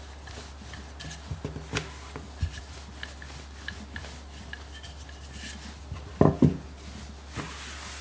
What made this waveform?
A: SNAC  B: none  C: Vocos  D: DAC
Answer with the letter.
B